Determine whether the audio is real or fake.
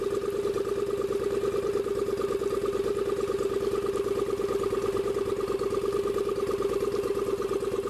real